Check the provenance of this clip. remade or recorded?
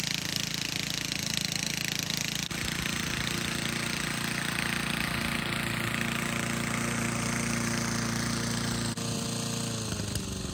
recorded